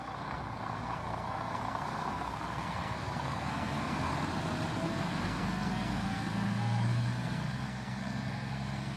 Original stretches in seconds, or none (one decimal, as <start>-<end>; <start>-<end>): 4.1-4.8